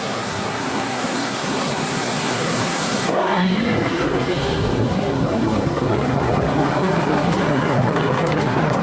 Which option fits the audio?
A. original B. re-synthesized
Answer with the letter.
B